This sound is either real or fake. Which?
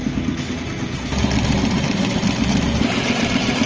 real